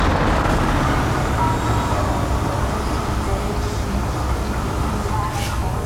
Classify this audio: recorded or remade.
recorded